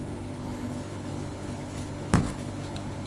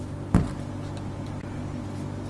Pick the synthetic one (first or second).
first